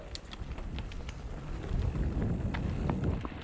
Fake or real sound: real